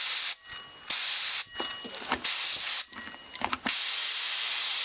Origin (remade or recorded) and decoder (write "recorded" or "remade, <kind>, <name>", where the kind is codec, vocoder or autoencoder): recorded